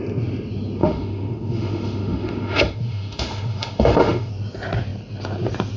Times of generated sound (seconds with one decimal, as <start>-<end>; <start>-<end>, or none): 0.8-4.3